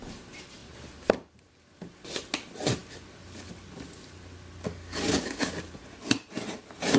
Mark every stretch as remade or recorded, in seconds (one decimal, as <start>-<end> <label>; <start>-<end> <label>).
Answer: 0.0-4.7 recorded; 4.7-5.5 remade; 5.5-7.0 recorded

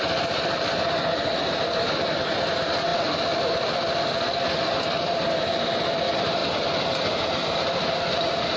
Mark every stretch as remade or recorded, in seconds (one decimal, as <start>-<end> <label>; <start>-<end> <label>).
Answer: 0.0-2.9 remade; 2.9-3.4 recorded; 3.4-8.6 remade

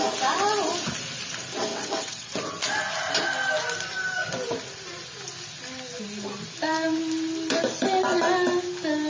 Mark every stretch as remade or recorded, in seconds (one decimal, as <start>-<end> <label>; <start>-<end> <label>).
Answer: 0.0-1.7 recorded; 1.7-2.3 remade; 2.3-9.1 recorded

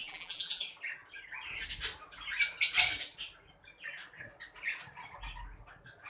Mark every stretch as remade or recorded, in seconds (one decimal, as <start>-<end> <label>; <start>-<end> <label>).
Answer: 0.0-0.6 remade; 0.6-6.1 recorded

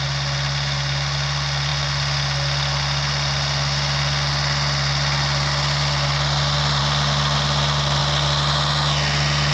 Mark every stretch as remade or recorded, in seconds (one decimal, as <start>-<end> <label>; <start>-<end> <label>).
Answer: 0.0-9.5 recorded